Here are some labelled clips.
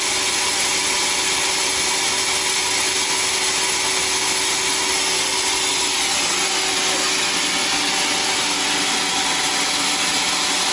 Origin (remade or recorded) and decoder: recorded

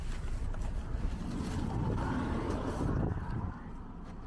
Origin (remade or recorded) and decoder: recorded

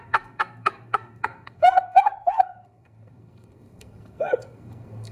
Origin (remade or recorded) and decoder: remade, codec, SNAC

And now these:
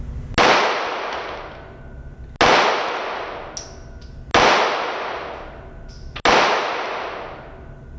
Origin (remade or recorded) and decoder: recorded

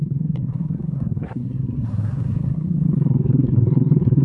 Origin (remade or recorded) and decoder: remade, codec, SNAC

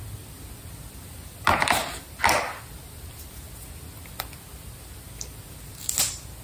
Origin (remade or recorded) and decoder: recorded